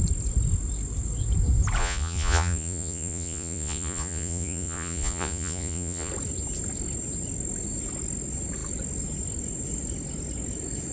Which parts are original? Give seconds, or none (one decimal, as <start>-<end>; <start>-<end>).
0.0-1.8; 6.1-10.9